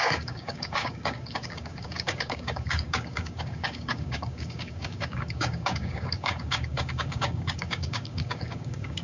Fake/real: fake